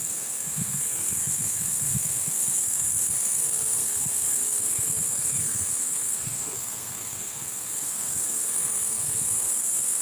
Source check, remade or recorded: remade